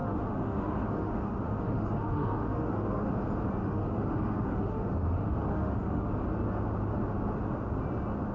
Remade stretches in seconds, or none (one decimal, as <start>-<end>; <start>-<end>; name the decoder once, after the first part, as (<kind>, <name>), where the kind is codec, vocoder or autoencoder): 0.0-3.1 (autoencoder, DAC-VAE); 3.6-6.1